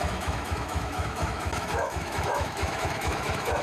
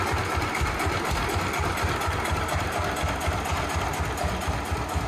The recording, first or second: second